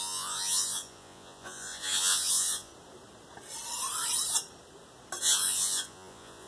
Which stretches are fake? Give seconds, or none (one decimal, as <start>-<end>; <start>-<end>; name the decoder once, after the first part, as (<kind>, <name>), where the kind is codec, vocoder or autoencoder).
0.0-2.7 (vocoder, Vocos); 5.2-6.5